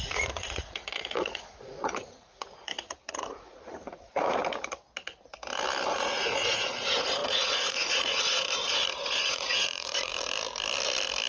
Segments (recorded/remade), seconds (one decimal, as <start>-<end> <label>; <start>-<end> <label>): 0.0-4.4 remade; 4.4-5.9 recorded; 5.9-10.1 remade; 10.1-11.3 recorded